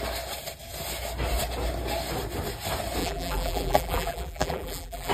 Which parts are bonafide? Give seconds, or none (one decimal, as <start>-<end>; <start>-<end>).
0.0-3.0